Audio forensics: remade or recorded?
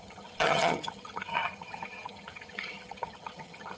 remade